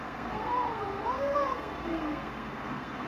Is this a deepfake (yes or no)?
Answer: yes